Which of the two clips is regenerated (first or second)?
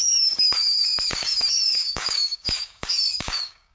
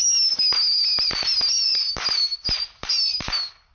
first